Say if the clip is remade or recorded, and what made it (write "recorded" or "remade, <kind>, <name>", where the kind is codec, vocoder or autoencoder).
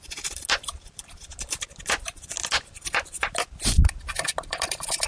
recorded